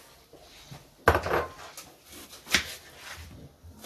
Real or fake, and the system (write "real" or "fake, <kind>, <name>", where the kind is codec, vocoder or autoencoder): real